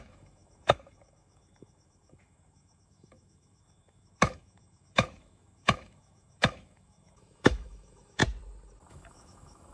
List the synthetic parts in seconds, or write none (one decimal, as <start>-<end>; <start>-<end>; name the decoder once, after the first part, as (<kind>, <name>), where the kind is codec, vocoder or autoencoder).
0.0-8.2 (autoencoder, DAC-VAE); 8.9-9.7